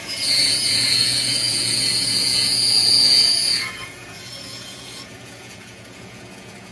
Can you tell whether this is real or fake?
fake